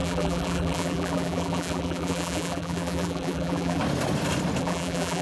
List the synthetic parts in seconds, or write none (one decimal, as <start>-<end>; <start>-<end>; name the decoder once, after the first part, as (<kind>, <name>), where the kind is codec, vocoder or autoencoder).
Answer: 0.0-3.8 (vocoder, BigVGAN v2); 4.6-5.2